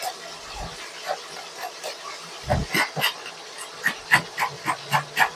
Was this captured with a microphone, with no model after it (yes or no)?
yes